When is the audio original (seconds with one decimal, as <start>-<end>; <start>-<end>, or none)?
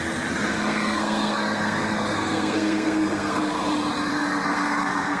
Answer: 0.0-0.5; 3.6-4.1